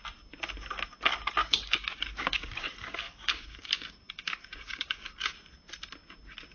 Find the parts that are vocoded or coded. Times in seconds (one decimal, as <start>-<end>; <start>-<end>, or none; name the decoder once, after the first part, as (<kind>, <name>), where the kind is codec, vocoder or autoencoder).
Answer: 1.4-5.3 (codec, DAC)